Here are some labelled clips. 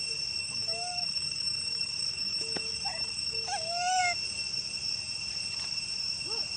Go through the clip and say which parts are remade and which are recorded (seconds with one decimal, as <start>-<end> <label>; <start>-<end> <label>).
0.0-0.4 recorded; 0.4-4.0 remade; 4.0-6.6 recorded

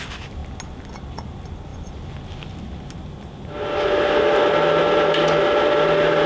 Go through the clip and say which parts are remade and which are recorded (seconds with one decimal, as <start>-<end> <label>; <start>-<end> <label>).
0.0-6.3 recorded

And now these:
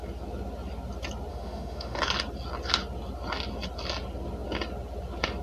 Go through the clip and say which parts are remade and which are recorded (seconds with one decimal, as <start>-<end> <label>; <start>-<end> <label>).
0.0-1.3 recorded; 1.3-2.0 remade; 2.0-5.4 recorded

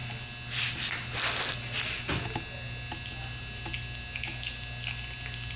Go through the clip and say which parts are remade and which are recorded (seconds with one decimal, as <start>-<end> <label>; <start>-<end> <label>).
0.0-5.6 recorded

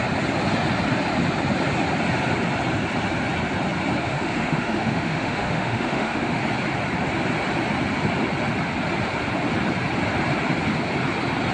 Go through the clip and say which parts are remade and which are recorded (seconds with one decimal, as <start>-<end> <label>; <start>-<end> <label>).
0.0-4.0 recorded; 4.0-6.4 remade; 6.4-11.5 recorded

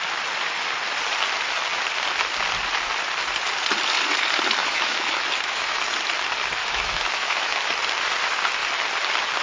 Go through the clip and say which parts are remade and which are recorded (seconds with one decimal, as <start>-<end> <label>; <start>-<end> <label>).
0.0-4.6 recorded; 4.6-5.8 remade; 5.8-6.6 recorded; 6.6-7.7 remade; 7.7-9.4 recorded

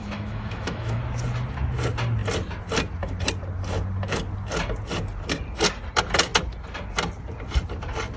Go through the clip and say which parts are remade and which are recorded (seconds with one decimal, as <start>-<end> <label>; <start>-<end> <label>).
0.0-1.0 remade; 1.0-8.2 recorded